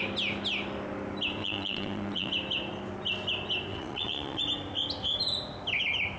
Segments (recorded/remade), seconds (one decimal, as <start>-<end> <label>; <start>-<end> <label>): 0.0-1.4 recorded; 1.4-2.3 remade; 2.3-3.7 recorded; 3.7-4.4 remade; 4.4-6.2 recorded

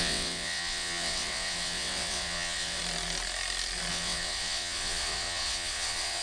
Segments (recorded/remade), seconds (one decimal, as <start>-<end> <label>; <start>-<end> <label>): 0.0-2.8 remade; 2.8-3.9 recorded; 3.9-6.2 remade

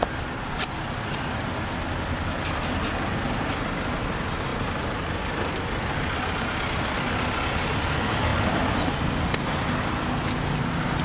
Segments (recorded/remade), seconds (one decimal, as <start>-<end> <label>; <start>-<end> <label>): 0.0-11.0 recorded

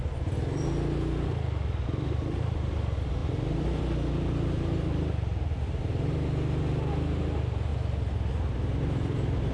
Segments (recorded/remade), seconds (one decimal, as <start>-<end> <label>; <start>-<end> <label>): 0.0-9.5 recorded

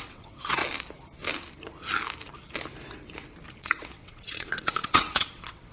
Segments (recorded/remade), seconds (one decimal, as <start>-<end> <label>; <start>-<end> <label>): 0.0-0.6 remade; 0.6-3.6 recorded; 3.6-5.7 remade